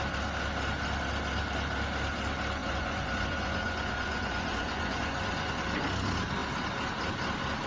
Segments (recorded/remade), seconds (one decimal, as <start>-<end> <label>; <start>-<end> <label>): 0.0-2.6 recorded; 2.6-5.5 remade; 5.5-7.7 recorded